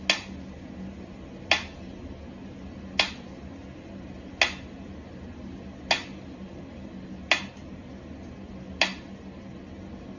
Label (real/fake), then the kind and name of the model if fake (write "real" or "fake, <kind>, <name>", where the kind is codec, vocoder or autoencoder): real